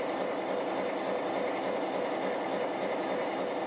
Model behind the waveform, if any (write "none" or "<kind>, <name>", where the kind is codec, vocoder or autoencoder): none